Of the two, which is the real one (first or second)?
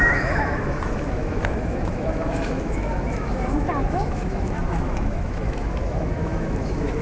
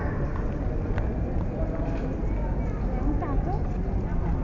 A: second